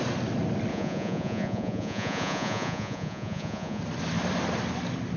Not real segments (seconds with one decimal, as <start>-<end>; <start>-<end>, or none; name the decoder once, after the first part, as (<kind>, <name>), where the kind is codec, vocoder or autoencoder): 0.7-3.8 (vocoder, Vocos)